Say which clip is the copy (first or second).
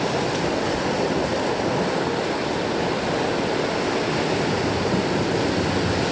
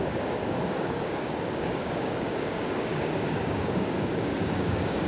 second